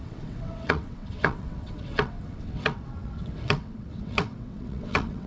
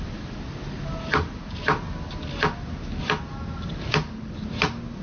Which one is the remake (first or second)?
first